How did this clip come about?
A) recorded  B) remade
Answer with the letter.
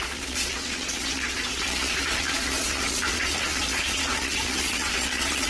B